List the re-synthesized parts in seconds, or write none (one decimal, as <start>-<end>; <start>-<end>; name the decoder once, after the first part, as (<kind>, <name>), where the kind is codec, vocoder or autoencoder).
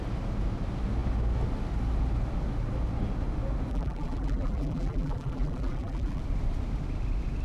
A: 3.7-6.2 (vocoder, BigVGAN v2)